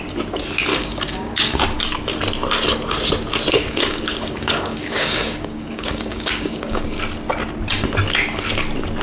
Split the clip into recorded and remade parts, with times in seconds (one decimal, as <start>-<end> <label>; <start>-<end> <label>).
0.0-0.7 recorded; 0.7-1.6 remade; 1.6-3.6 recorded; 3.6-7.0 remade; 7.0-9.0 recorded